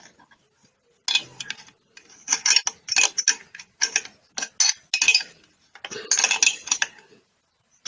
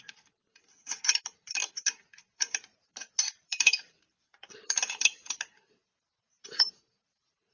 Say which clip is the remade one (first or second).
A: second